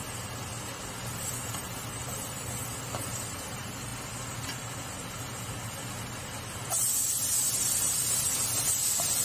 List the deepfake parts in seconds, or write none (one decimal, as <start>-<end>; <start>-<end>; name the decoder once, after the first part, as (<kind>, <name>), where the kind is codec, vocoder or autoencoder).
none